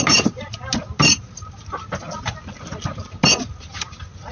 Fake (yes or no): no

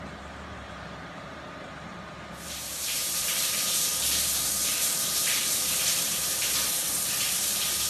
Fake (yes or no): yes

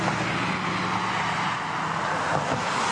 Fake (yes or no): no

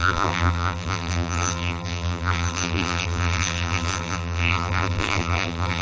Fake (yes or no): yes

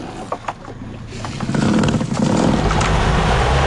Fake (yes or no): no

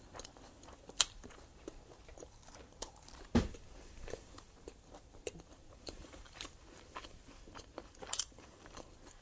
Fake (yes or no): yes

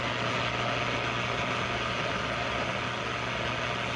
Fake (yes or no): no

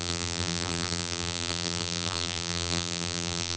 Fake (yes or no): yes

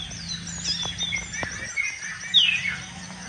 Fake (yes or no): no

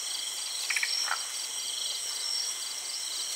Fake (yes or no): no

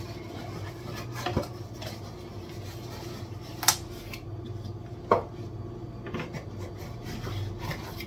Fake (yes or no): no